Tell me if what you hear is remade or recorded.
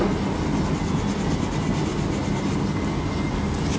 recorded